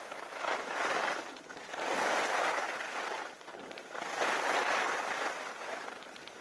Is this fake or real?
fake